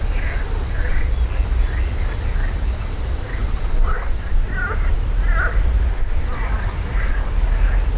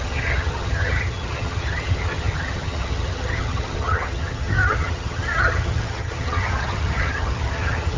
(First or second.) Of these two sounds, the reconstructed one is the second